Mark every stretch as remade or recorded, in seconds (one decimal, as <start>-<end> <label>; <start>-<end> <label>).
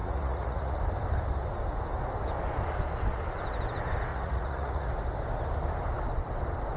0.0-0.8 remade; 0.8-4.1 recorded; 4.1-4.9 remade; 4.9-6.8 recorded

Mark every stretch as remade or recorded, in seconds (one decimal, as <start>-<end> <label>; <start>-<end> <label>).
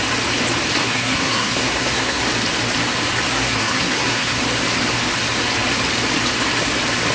0.0-0.8 recorded; 0.8-2.2 remade; 2.2-3.3 recorded; 3.3-4.4 remade; 4.4-7.1 recorded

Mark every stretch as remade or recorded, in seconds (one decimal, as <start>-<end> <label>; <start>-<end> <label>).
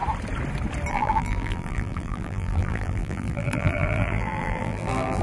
0.0-0.9 recorded; 0.9-5.2 remade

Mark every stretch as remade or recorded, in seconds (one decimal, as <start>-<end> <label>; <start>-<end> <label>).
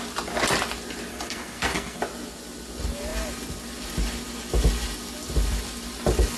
0.0-1.1 recorded; 1.1-2.0 remade; 2.0-6.4 recorded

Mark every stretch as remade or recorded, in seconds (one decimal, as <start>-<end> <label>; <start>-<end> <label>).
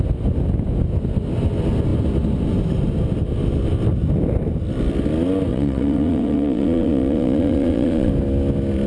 0.0-5.5 recorded; 5.5-8.1 remade; 8.1-8.9 recorded